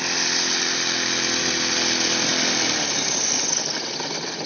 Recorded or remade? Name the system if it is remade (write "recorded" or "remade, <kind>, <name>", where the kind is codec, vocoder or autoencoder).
recorded